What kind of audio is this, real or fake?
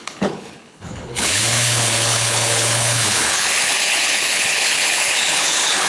fake